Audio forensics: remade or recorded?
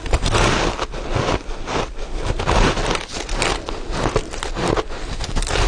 recorded